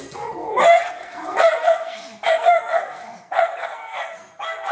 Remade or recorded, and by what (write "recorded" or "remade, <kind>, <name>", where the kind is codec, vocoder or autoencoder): remade, codec, SNAC